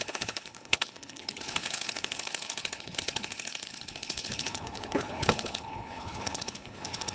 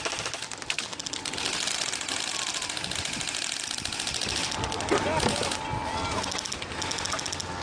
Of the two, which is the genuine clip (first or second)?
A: second